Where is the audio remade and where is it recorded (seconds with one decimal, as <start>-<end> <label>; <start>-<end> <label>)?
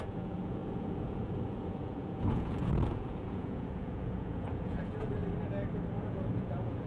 0.0-5.2 remade; 5.2-6.0 recorded; 6.0-6.9 remade